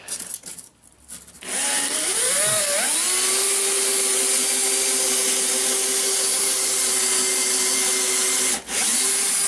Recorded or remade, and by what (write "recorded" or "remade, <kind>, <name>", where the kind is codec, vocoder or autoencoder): recorded